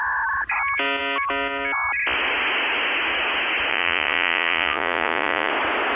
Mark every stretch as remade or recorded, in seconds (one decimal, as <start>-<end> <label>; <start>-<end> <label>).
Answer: 0.0-3.7 recorded; 3.7-5.5 remade; 5.5-6.0 recorded